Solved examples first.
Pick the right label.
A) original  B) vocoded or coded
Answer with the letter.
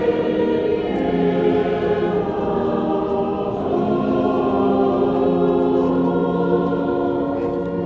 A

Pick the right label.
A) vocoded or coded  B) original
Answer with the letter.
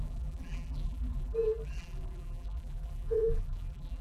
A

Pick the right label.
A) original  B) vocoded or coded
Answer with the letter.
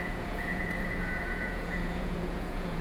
B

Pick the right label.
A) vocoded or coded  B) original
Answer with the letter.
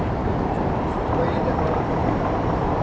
A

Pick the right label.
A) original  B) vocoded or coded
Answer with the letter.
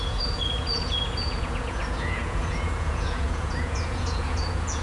B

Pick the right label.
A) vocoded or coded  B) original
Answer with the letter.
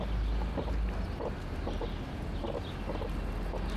B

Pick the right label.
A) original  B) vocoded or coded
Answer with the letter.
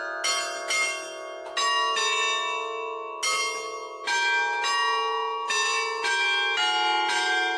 A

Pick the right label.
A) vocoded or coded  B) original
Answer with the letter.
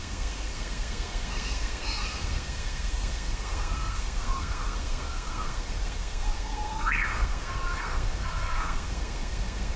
A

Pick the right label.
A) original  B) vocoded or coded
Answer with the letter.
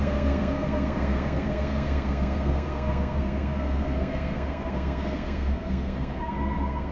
B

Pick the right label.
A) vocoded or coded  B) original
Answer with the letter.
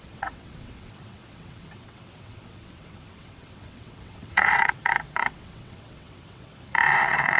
A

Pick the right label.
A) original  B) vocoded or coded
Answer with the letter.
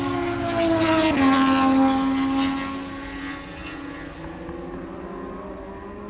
A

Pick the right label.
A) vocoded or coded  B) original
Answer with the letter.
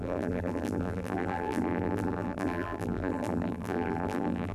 A